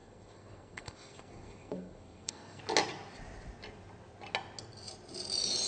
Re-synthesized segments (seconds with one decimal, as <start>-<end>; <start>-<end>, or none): 0.0-2.6